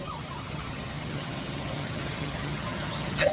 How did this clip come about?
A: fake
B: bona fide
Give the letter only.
A